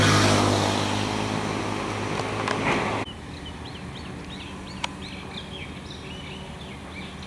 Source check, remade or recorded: recorded